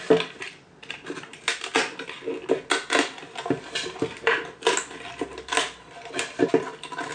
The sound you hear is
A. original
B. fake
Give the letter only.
A